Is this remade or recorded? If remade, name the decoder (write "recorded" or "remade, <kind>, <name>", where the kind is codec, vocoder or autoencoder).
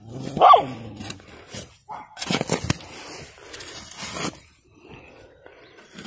recorded